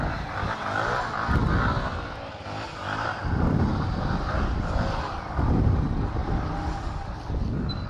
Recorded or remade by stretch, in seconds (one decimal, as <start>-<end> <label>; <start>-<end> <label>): 0.0-7.9 recorded